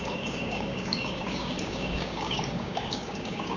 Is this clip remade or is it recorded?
remade